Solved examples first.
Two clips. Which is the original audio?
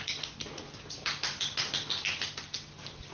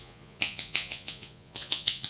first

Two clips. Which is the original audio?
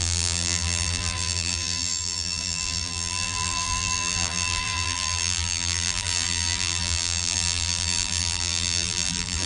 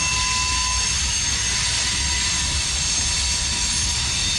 second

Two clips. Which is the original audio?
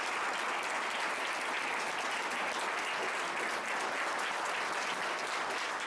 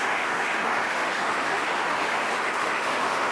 first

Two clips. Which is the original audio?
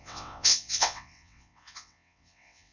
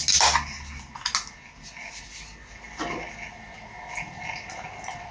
second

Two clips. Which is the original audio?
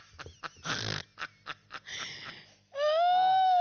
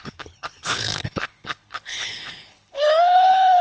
first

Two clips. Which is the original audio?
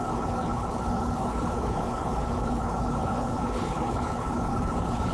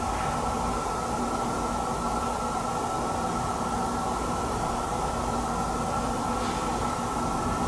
second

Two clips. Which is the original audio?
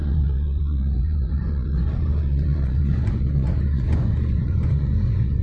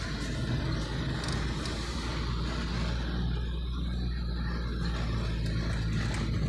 second